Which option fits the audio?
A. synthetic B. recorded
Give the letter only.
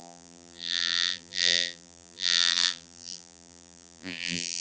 A